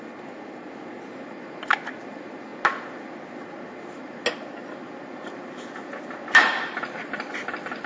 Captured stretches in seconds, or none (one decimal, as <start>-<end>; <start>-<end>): 0.0-7.9